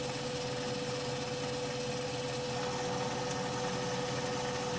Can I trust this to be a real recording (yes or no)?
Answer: yes